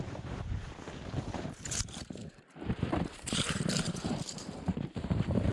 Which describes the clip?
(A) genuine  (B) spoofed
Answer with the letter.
B